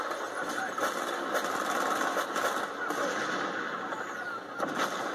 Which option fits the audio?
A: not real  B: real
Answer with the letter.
B